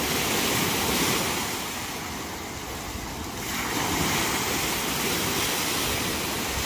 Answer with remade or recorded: recorded